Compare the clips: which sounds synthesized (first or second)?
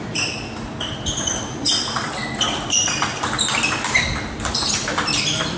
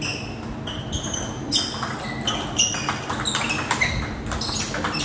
first